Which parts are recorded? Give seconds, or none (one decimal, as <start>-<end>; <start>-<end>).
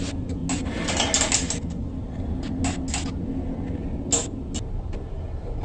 0.0-5.6